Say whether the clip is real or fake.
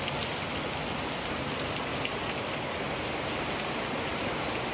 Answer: real